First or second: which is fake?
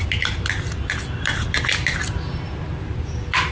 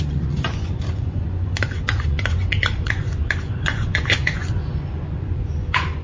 second